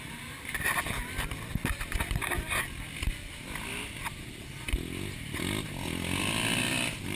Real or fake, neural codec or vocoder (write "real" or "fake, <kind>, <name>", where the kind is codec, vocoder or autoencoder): real